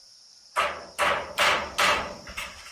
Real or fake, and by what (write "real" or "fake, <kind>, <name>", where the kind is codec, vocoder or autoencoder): fake, vocoder, BigVGAN v2